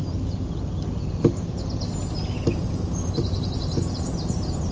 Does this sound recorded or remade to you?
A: recorded